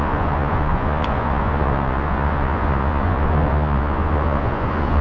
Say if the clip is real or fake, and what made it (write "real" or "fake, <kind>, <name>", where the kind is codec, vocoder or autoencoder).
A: fake, vocoder, Vocos